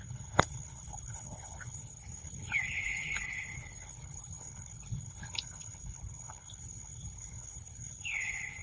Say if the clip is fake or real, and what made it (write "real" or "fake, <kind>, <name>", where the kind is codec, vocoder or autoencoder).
fake, codec, HILCodec